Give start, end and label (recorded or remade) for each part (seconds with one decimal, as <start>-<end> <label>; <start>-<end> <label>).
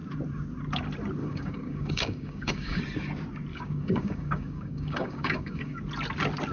0.0-1.2 recorded; 1.2-2.8 remade; 2.8-3.5 recorded; 3.5-5.8 remade; 5.8-6.5 recorded